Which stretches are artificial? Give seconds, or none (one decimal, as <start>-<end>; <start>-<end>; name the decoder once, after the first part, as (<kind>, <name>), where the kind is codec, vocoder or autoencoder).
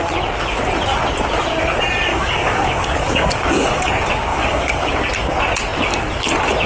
2.1-3.9 (codec, DAC); 4.3-4.9